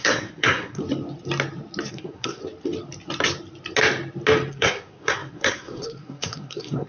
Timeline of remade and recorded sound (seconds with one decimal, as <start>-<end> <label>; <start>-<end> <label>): 0.0-0.8 remade; 0.8-1.9 recorded; 1.9-2.4 remade; 2.4-4.5 recorded; 4.5-6.9 remade